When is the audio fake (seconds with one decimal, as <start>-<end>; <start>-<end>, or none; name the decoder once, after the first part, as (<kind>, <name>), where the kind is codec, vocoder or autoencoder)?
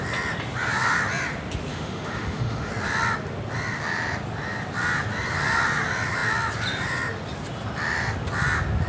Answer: 1.7-2.7 (autoencoder, DAC-VAE)